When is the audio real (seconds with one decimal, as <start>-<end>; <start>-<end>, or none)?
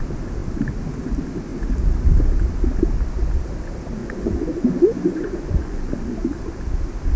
0.0-4.0; 5.9-7.2